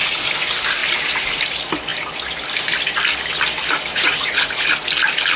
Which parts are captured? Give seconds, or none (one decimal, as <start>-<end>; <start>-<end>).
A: 0.0-3.9; 4.7-5.4